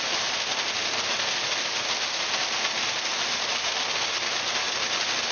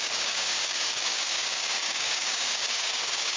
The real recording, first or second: first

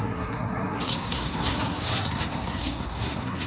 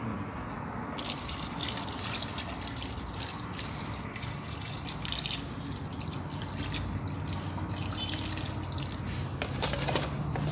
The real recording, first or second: second